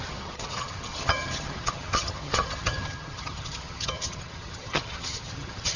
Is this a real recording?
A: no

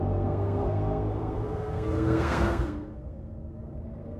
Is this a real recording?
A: no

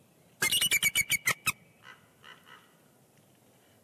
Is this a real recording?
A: yes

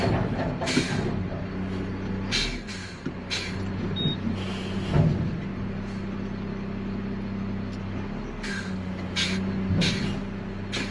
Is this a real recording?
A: yes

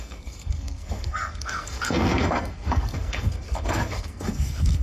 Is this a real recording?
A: no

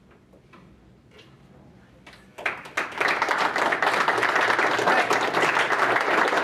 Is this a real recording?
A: yes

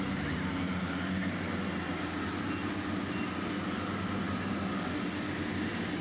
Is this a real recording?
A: yes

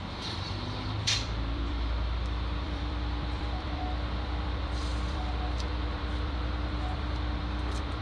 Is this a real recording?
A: no